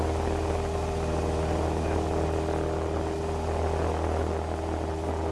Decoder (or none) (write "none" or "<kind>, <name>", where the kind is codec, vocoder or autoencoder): none